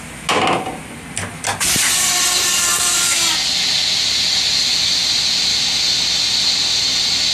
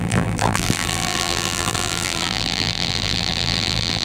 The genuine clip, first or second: first